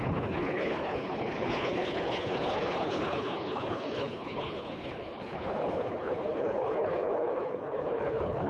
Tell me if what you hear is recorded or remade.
remade